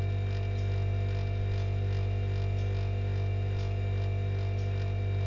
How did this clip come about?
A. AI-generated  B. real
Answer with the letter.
B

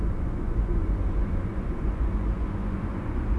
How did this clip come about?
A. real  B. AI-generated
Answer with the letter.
B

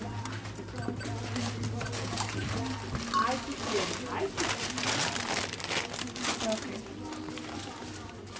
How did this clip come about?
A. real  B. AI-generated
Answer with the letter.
A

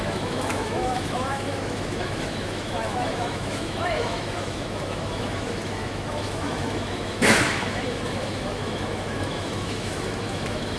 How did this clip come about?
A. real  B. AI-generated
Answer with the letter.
B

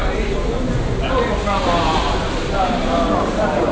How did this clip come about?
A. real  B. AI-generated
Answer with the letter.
A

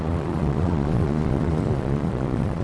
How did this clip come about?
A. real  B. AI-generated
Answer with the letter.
B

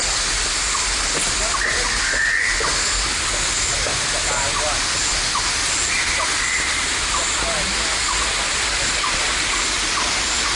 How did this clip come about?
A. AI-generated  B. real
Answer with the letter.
B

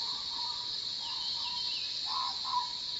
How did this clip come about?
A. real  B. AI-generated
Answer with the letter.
A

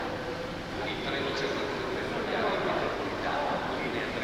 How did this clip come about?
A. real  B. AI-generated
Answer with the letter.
A